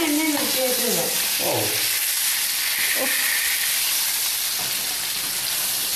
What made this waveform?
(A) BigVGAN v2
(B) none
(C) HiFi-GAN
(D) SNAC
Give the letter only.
B